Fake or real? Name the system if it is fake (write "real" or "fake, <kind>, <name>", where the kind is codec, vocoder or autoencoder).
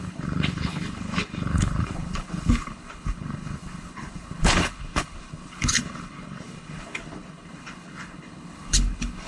fake, codec, HILCodec